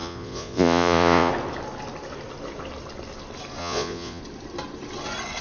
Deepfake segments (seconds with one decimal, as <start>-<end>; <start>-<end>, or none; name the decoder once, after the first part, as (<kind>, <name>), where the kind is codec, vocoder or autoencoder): 0.0-1.3 (vocoder, Vocos); 3.6-4.2